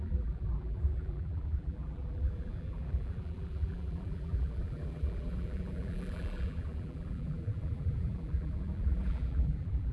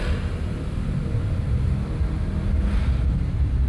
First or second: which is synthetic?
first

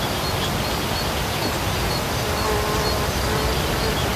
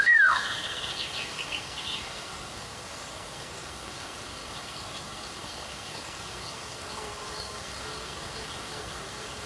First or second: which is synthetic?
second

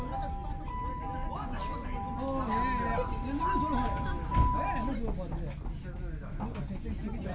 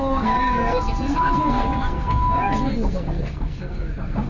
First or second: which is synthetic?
second